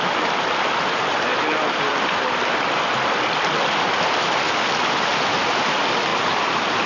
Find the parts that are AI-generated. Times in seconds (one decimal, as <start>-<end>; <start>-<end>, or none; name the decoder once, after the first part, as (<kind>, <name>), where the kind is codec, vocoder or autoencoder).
none